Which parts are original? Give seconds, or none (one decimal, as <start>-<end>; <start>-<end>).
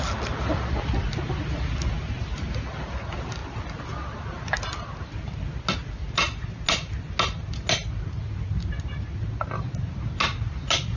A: 0.0-11.0